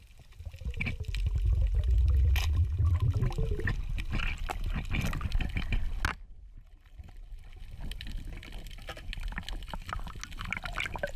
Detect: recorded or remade recorded